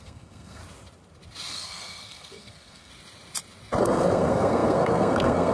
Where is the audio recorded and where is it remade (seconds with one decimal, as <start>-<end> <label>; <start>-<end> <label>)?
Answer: 0.0-0.6 remade; 0.6-1.5 recorded; 1.5-2.9 remade; 2.9-3.8 recorded; 3.8-5.5 remade